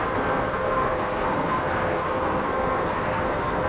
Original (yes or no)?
no